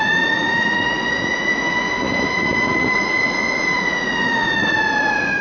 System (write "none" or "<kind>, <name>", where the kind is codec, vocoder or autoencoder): vocoder, Vocos